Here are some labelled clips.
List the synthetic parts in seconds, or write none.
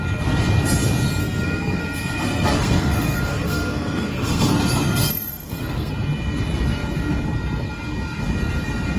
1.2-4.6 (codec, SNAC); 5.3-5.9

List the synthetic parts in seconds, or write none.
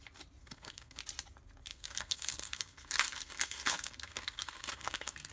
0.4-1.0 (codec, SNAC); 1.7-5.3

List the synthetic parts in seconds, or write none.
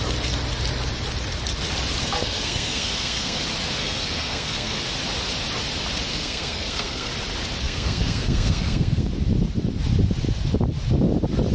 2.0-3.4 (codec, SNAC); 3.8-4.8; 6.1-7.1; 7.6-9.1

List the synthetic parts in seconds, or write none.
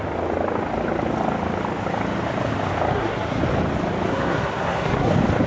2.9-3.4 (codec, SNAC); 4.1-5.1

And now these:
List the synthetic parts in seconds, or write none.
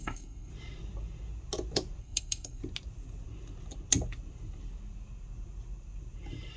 0.0-0.5 (codec, SNAC); 2.0-2.6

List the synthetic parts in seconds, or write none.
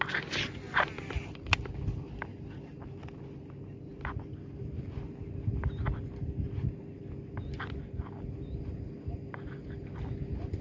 none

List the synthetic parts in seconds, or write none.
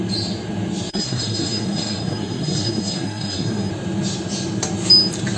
0.9-3.7 (codec, SNAC)